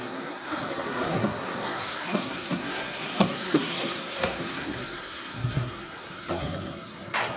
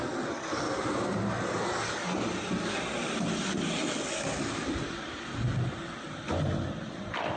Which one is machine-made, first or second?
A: first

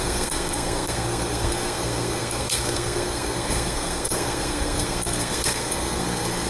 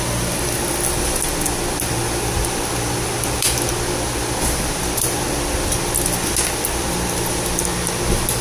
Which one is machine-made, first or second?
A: first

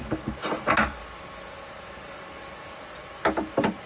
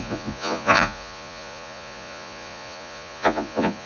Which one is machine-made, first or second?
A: second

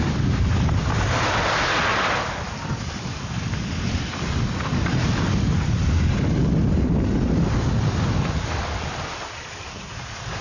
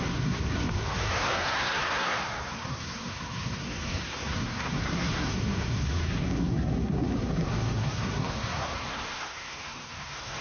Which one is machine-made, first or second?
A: second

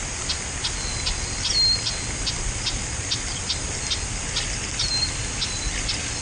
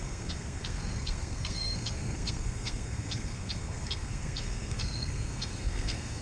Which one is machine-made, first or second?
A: second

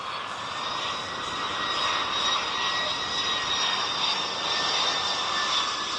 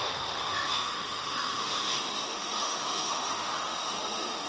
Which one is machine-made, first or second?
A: second